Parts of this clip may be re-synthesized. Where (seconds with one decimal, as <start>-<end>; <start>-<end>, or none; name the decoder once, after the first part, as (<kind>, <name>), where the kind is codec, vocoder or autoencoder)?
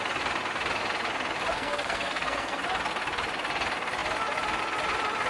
1.5-2.6 (codec, SNAC)